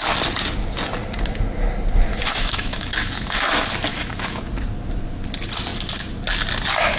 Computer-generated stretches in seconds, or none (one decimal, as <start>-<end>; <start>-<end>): 2.1-3.5; 3.9-4.4